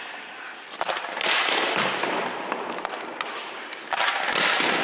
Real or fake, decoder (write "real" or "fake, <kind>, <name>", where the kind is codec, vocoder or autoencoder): real